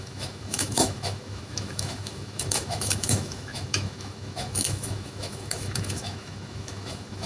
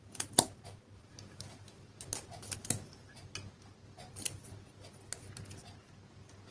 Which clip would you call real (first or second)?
second